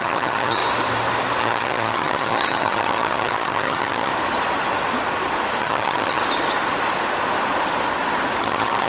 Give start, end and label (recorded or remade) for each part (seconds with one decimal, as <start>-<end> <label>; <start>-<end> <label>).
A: 0.0-0.6 remade; 0.6-1.4 recorded; 1.4-4.1 remade; 4.1-5.6 recorded; 5.6-6.2 remade; 6.2-8.4 recorded; 8.4-8.9 remade